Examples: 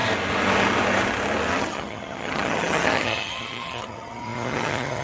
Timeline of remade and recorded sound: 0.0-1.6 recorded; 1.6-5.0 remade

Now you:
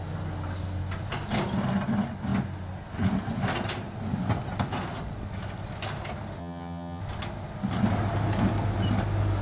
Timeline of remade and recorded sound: 0.0-6.4 recorded; 6.4-7.0 remade; 7.0-9.4 recorded

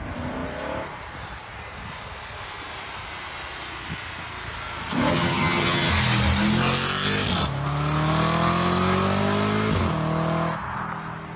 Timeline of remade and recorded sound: 0.0-5.1 recorded; 5.1-5.9 remade; 5.9-11.4 recorded

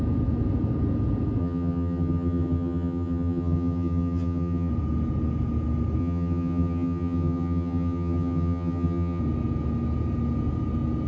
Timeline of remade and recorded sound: 0.0-1.4 recorded; 1.4-4.7 remade; 4.7-6.0 recorded; 6.0-9.2 remade; 9.2-11.1 recorded

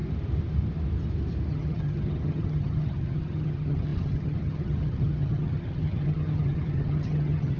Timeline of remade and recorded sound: 0.0-1.5 recorded; 1.5-7.6 remade

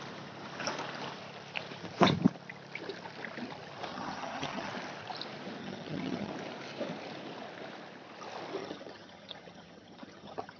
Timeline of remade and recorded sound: 0.0-3.9 recorded; 3.9-4.7 remade; 4.7-5.6 recorded; 5.6-6.3 remade; 6.3-8.6 recorded; 8.6-10.6 remade